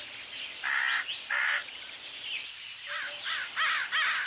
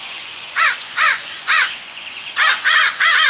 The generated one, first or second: second